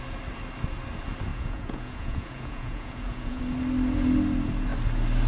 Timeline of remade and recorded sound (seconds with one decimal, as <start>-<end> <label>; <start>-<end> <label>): 0.0-1.3 recorded; 1.3-3.4 remade; 3.4-5.3 recorded